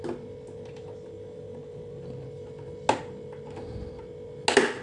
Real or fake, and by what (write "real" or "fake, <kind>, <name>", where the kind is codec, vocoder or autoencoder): real